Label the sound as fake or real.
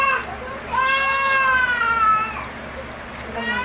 real